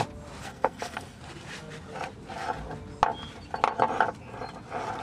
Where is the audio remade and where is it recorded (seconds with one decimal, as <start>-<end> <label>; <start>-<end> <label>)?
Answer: 0.0-0.4 recorded; 0.4-1.2 remade; 1.2-5.0 recorded